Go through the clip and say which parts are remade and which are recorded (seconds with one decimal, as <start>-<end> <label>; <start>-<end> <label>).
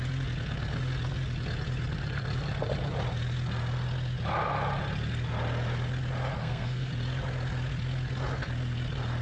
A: 0.0-6.4 recorded; 6.4-6.9 remade; 6.9-9.2 recorded